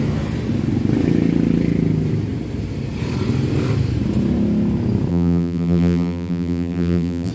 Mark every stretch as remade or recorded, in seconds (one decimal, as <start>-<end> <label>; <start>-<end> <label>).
0.0-5.1 recorded; 5.1-7.3 remade